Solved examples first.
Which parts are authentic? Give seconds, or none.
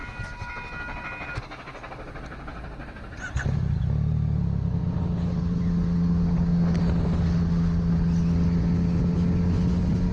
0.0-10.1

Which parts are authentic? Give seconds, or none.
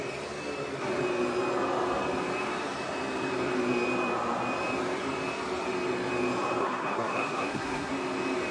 0.0-6.6; 7.9-8.5